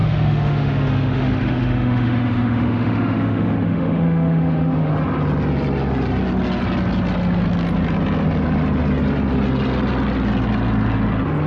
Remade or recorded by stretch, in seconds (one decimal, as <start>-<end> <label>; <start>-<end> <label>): 0.0-4.9 remade; 4.9-11.5 recorded